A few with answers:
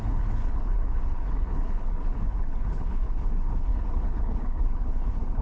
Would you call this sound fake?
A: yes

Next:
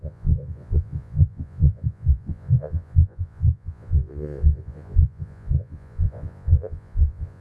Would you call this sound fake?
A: yes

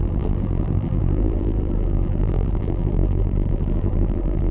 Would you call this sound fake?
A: yes